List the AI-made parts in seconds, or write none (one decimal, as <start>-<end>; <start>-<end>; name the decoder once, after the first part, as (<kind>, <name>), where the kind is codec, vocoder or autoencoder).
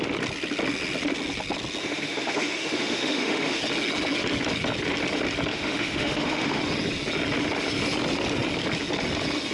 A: 1.8-3.6 (autoencoder, DAC-VAE); 5.5-6.6